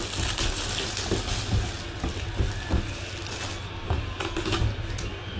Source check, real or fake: real